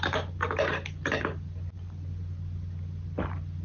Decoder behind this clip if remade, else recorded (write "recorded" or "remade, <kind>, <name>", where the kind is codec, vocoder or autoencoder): recorded